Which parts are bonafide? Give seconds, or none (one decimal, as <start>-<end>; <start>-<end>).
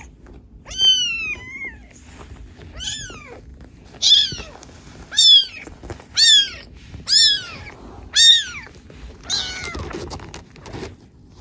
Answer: 0.0-3.5; 7.8-11.4